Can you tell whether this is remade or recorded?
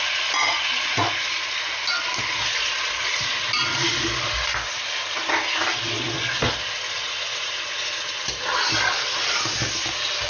recorded